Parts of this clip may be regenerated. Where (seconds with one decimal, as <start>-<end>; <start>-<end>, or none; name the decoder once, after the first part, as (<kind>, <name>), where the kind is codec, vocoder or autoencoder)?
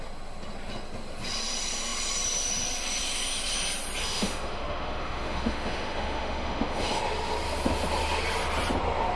4.0-7.0 (autoencoder, DAC-VAE)